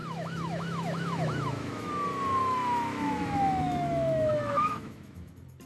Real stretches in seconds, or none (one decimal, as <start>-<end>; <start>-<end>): 1.9-2.4; 5.3-5.7